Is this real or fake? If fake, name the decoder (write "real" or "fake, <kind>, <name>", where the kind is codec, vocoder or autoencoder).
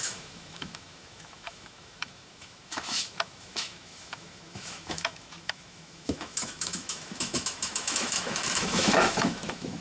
fake, autoencoder, DAC-VAE